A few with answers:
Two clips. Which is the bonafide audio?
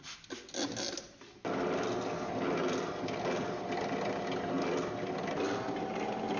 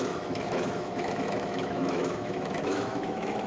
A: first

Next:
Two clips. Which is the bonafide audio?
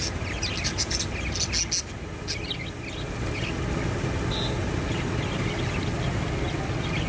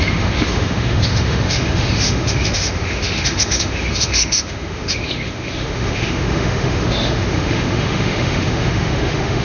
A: first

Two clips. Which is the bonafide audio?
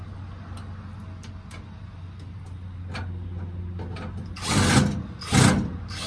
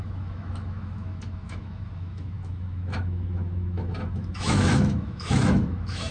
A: first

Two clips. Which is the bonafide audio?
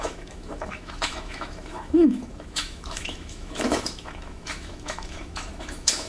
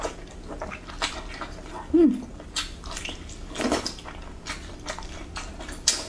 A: second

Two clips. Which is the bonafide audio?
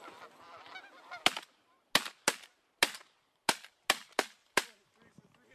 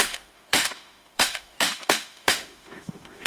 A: first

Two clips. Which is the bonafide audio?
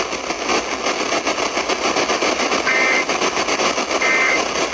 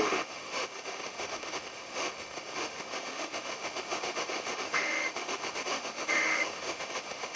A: first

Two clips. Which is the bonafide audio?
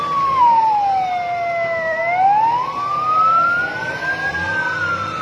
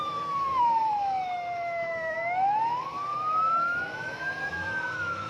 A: first